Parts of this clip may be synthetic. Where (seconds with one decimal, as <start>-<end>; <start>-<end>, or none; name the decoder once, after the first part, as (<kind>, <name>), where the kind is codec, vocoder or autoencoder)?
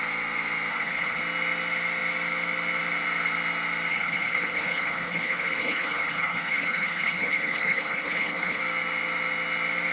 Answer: 0.7-1.2 (codec, HILCodec); 3.9-8.6